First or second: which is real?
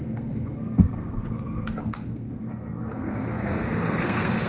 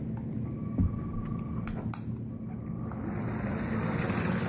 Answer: second